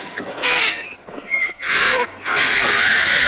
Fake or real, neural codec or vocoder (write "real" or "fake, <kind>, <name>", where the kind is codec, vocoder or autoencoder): fake, codec, SNAC